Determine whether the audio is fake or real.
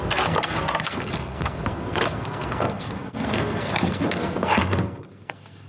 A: fake